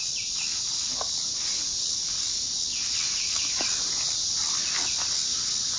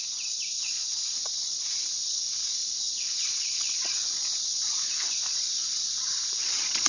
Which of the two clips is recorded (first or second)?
first